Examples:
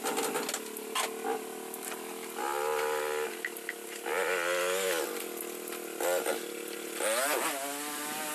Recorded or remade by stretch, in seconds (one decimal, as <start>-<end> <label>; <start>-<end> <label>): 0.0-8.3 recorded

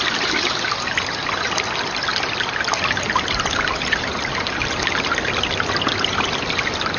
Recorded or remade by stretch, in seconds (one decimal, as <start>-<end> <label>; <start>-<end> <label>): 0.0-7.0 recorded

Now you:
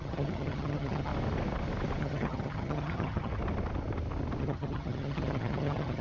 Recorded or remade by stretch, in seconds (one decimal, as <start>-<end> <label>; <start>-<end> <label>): 0.0-1.1 remade; 1.1-2.0 recorded; 2.0-3.3 remade; 3.3-4.4 recorded; 4.4-6.0 remade

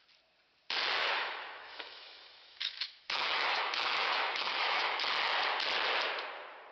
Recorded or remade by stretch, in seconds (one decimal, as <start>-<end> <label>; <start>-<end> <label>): 0.0-1.0 recorded; 1.0-5.0 remade; 5.0-6.7 recorded